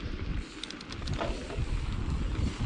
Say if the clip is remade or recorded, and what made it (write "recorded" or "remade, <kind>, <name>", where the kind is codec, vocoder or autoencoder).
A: recorded